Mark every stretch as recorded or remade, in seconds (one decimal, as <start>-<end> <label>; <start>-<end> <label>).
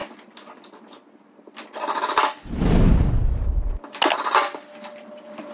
0.0-5.5 recorded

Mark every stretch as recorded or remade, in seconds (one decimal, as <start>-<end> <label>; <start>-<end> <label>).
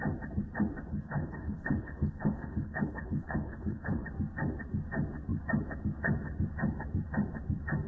0.0-0.9 recorded; 0.9-4.1 remade; 4.1-7.9 recorded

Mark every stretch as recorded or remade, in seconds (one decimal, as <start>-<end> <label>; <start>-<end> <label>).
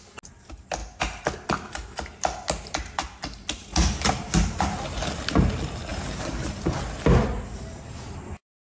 0.0-5.9 recorded; 5.9-6.8 remade; 6.8-8.7 recorded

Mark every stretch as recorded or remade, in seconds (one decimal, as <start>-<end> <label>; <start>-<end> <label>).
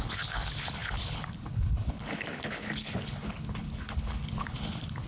0.0-5.1 remade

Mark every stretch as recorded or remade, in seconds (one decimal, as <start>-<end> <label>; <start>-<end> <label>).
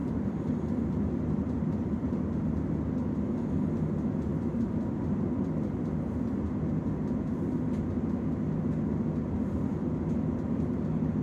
0.0-1.3 remade; 1.3-4.3 recorded; 4.3-6.5 remade; 6.5-11.2 recorded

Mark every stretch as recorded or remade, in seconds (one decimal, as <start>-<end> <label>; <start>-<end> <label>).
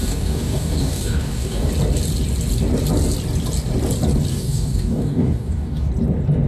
0.0-1.7 remade; 1.7-4.3 recorded; 4.3-5.9 remade; 5.9-6.5 recorded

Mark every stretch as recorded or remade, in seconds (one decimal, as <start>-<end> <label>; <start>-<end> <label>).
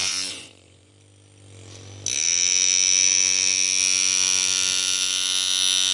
0.0-0.9 remade; 0.9-5.9 recorded